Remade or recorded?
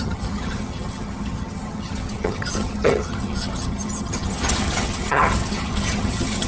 remade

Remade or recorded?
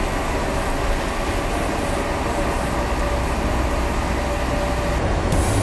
recorded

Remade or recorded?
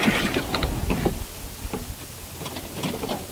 recorded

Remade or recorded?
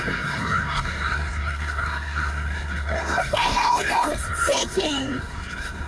remade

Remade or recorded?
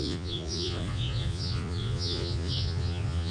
remade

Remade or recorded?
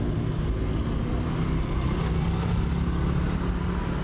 recorded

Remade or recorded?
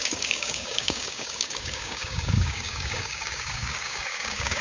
remade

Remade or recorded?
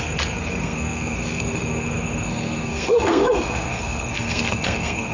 remade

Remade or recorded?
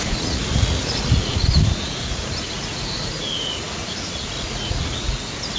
remade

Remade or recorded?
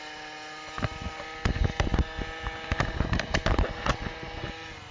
recorded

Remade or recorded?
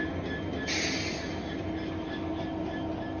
recorded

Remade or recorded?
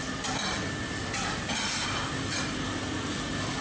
remade